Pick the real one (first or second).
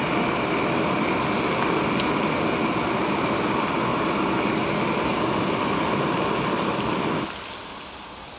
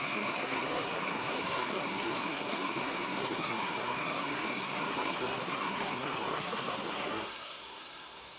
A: first